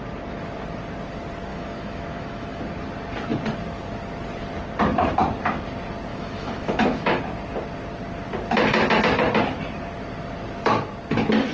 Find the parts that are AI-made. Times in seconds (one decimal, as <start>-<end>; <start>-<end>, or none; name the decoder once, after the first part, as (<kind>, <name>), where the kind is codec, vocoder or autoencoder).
1.5-2.6 (autoencoder, DAC-VAE); 6.1-7.2